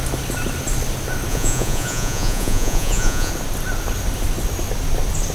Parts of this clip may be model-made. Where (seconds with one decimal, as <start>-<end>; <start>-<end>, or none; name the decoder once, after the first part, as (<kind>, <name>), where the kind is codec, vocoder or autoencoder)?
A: 1.3-3.3 (vocoder, Vocos)